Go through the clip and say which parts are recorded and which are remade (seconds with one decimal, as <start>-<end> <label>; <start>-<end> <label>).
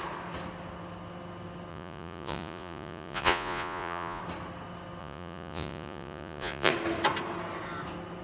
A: 0.0-1.7 recorded; 1.7-4.2 remade; 4.2-5.0 recorded; 5.0-6.7 remade; 6.7-8.2 recorded